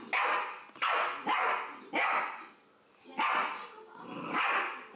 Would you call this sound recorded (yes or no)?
yes